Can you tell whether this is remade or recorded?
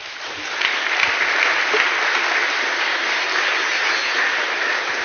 recorded